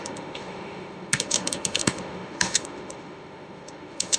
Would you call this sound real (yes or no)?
no